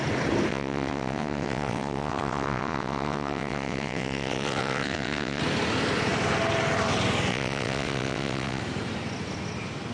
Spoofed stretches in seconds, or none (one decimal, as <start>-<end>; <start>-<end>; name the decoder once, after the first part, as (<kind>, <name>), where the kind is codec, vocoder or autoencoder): 0.5-5.4 (vocoder, WaveNeXt); 7.3-8.6